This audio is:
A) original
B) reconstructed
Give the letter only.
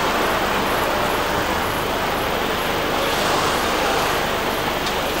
A